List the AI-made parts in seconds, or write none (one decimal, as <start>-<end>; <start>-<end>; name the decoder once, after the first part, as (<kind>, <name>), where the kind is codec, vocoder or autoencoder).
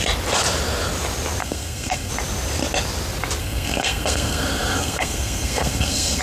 1.4-2.1 (codec, SNAC); 3.4-6.2